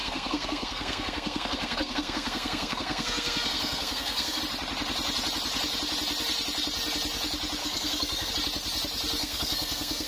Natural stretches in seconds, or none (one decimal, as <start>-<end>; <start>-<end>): 4.4-7.6; 8.3-9.2